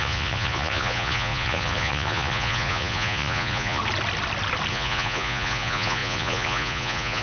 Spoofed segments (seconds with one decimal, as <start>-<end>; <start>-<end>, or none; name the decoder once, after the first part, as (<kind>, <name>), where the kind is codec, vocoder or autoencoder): 0.0-3.8 (vocoder, Vocos); 4.7-7.2